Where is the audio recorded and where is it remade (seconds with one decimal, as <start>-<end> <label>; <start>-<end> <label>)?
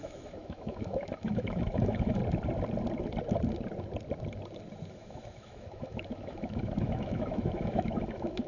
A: 0.0-2.2 remade; 2.2-4.9 recorded; 4.9-8.5 remade